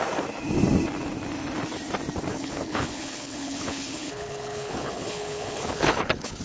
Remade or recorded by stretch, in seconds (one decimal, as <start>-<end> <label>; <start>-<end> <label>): 0.0-2.3 recorded; 2.3-6.4 remade